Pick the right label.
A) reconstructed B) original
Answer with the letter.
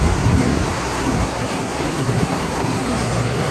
A